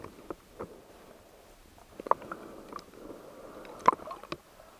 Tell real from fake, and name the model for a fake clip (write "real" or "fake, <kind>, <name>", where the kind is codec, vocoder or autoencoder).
real